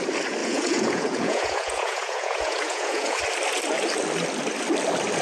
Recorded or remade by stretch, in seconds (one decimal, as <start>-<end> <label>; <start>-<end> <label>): 0.0-0.4 recorded; 0.4-3.2 remade; 3.2-5.2 recorded